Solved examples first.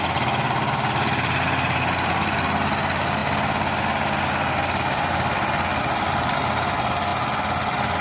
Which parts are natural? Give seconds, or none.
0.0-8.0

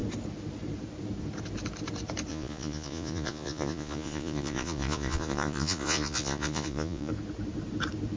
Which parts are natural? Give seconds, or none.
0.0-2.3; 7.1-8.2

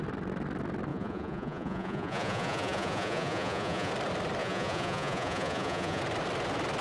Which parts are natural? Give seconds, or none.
0.0-0.9; 3.9-4.4; 6.0-6.8

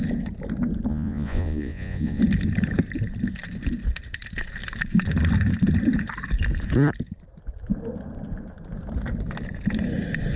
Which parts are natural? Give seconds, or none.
0.0-0.9; 2.2-10.4

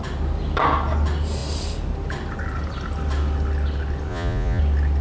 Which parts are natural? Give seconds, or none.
0.0-4.1; 4.6-5.0

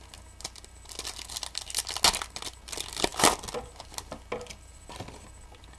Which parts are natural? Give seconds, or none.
0.0-5.8